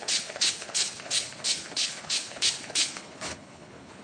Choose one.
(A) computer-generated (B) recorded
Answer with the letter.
A